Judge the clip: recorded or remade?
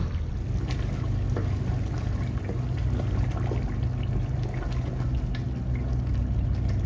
recorded